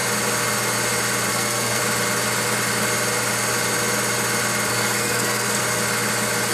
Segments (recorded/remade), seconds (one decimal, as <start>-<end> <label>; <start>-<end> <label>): 0.0-1.3 recorded; 1.3-1.8 remade; 1.8-4.7 recorded; 4.7-5.6 remade; 5.6-6.5 recorded